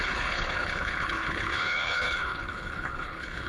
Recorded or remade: remade